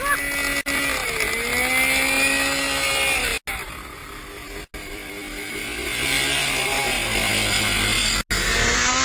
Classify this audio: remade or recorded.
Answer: recorded